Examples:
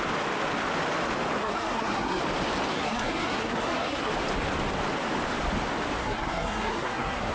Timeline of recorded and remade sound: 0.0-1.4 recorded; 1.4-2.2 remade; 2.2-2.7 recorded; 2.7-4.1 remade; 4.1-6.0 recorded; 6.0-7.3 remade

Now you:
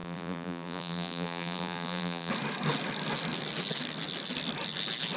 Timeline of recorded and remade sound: 0.0-2.3 remade; 2.3-5.2 recorded

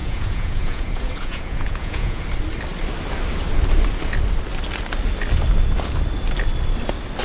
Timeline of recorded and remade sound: 0.0-2.2 remade; 2.2-7.2 recorded

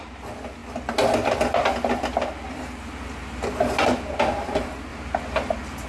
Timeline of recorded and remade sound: 0.0-5.9 recorded

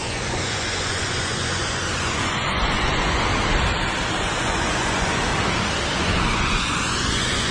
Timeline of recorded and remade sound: 0.0-3.3 remade; 3.3-4.2 recorded; 4.2-5.3 remade; 5.3-5.9 recorded; 5.9-7.5 remade